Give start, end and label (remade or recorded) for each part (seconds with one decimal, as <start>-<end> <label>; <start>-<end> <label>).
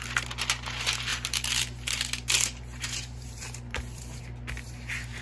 0.0-1.1 recorded; 1.1-4.2 remade; 4.2-5.2 recorded